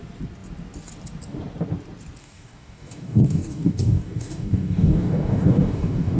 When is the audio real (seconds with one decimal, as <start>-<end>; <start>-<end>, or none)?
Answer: 0.0-2.2